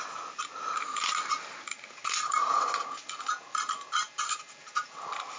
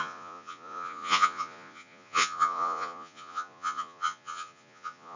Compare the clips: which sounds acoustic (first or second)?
first